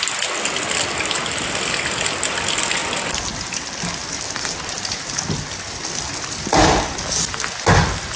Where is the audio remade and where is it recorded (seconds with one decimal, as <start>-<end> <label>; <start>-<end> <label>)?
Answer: 0.0-8.2 recorded